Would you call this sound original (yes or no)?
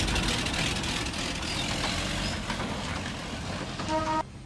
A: yes